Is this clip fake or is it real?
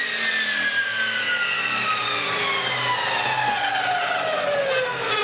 real